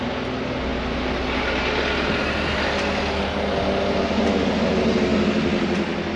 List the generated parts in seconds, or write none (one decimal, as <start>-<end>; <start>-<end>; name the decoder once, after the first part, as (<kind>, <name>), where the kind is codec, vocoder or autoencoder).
none